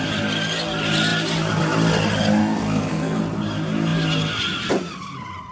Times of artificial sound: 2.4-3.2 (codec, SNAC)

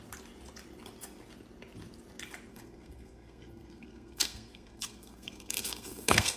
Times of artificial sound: 2.5-6.4 (codec, SNAC)

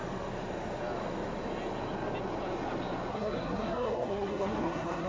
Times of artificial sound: 3.1-5.1 (codec, SNAC)

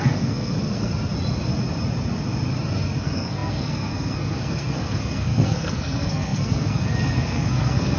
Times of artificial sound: 0.0-0.9 (codec, SNAC); 3.0-8.0